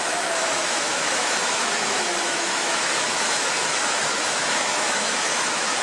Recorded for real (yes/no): no